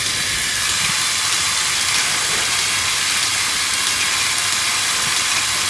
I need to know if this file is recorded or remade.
recorded